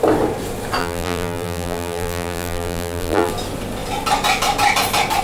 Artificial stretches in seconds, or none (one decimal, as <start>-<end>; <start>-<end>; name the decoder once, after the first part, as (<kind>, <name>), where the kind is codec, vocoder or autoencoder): 0.8-3.3 (vocoder, BigVGAN v2)